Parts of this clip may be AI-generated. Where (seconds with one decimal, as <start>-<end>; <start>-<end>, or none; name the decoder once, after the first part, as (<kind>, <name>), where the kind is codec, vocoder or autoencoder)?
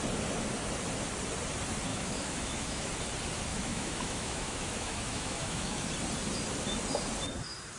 1.9-2.9 (autoencoder, DAC-VAE); 3.5-5.9